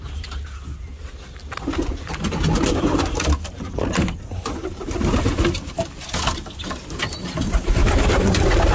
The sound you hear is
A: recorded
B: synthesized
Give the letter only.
A